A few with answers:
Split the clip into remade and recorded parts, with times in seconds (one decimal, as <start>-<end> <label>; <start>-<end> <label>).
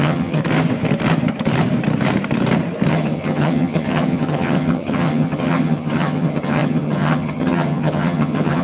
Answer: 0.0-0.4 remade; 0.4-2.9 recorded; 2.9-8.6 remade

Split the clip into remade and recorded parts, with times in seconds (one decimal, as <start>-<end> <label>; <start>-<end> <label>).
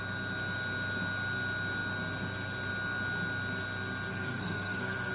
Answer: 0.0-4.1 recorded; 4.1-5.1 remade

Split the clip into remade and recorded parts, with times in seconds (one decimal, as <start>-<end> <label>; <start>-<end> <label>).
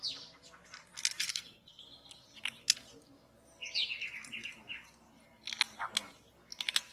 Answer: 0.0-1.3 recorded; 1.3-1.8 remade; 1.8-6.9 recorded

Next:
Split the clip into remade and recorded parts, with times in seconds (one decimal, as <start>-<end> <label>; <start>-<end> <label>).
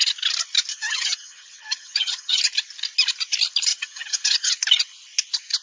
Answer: 0.0-0.7 recorded; 0.7-2.4 remade; 2.4-3.7 recorded; 3.7-4.5 remade; 4.5-5.6 recorded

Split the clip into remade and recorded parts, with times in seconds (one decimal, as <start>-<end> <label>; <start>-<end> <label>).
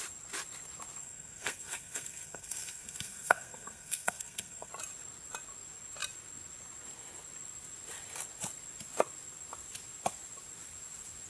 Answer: 0.0-1.0 recorded; 1.0-4.7 remade; 4.7-11.3 recorded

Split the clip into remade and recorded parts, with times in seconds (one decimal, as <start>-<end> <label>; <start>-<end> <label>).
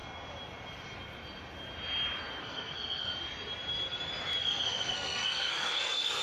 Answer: 0.0-2.4 recorded; 2.4-3.1 remade; 3.1-4.4 recorded; 4.4-6.2 remade